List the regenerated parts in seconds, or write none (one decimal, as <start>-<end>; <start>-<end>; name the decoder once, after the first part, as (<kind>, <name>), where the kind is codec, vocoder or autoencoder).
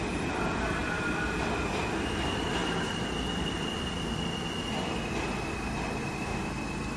2.6-5.0 (vocoder, BigVGAN v2)